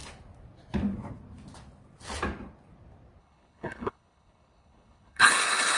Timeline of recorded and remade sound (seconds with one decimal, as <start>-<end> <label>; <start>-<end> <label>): 0.0-3.2 recorded; 3.2-5.8 remade